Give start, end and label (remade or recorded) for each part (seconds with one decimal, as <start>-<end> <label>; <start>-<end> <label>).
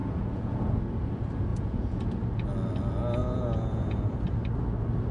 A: 0.0-0.8 remade; 0.8-1.5 recorded; 1.5-2.0 remade; 2.0-3.2 recorded; 3.2-4.2 remade; 4.2-5.1 recorded